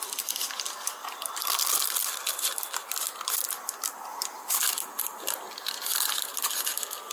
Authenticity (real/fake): real